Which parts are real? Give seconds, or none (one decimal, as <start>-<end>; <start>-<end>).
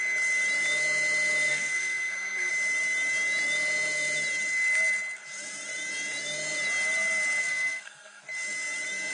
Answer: 0.0-1.5; 2.5-7.4; 8.2-9.1